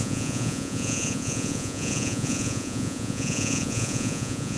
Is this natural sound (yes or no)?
no